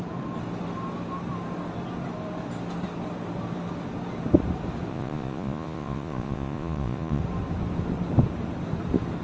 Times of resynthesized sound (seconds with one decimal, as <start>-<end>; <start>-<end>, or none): 4.9-7.2